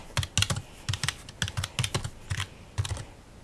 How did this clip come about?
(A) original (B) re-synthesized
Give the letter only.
A